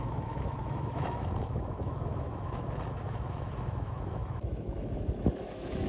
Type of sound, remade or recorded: remade